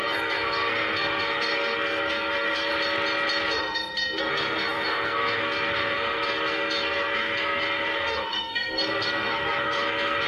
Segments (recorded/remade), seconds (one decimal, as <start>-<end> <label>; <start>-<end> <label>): 0.0-2.7 remade; 2.7-4.2 recorded; 4.2-10.3 remade